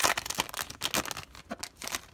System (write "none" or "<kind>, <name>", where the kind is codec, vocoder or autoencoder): none